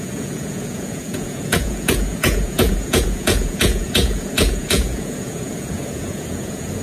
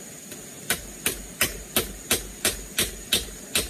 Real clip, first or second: second